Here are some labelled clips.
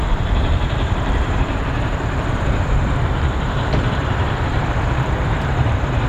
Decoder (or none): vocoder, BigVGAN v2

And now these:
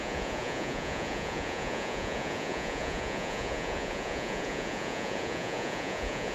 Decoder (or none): vocoder, Vocos